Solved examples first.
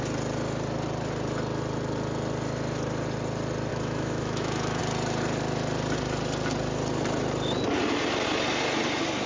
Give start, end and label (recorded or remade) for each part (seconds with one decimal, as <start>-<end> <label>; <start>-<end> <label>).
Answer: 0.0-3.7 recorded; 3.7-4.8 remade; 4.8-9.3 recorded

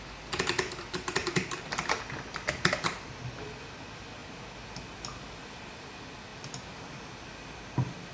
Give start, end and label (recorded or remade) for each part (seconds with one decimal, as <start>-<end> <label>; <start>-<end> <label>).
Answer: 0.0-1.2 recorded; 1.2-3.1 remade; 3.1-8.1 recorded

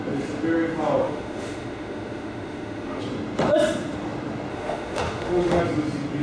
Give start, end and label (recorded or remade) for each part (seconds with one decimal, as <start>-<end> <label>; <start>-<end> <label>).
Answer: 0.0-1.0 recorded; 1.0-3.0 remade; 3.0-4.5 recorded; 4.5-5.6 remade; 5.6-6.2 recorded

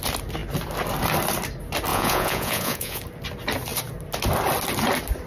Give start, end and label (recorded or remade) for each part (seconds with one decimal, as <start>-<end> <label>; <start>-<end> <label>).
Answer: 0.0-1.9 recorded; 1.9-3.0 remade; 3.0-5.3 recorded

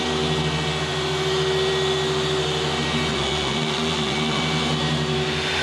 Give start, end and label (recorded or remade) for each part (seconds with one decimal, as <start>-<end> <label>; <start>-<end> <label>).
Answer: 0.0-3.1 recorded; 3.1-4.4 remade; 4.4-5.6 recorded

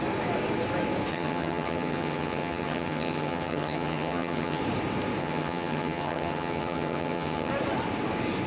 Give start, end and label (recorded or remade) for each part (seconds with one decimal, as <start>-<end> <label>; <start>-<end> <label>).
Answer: 0.0-1.1 recorded; 1.1-4.6 remade; 4.6-5.2 recorded; 5.2-7.5 remade; 7.5-8.5 recorded

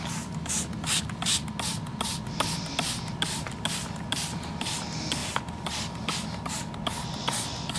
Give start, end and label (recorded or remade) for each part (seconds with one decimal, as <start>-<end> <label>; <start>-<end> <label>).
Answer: 0.0-5.2 recorded; 5.2-6.1 remade; 6.1-7.8 recorded

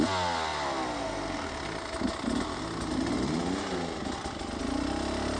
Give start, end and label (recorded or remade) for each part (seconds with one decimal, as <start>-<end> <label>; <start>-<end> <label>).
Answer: 0.0-5.4 recorded